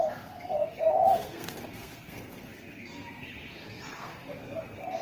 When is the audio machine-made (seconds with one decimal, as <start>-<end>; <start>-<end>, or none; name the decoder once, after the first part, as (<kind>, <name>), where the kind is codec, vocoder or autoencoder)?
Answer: 0.0-5.0 (codec, SNAC)

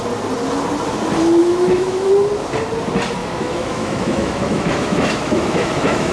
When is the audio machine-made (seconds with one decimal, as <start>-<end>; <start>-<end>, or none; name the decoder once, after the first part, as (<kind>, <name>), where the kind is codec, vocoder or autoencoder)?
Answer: 1.4-2.1 (autoencoder, DAC-VAE); 3.2-6.1

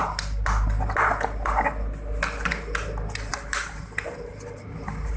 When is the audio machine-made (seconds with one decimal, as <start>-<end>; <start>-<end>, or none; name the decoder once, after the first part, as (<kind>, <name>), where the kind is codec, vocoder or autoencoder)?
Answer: 3.3-5.2 (vocoder, BigVGAN v2)

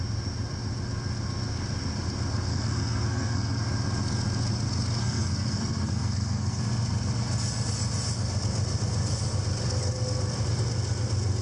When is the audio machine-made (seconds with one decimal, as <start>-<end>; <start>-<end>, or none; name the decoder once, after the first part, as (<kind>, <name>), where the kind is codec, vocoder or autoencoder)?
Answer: 2.5-3.6 (codec, SNAC); 5.0-6.6